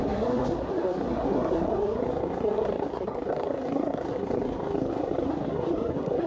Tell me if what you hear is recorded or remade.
remade